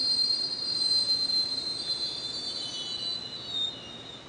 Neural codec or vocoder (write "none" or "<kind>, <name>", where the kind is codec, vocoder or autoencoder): none